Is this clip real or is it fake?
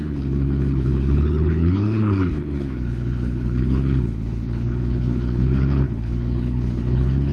fake